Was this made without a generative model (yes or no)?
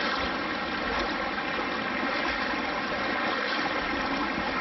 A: yes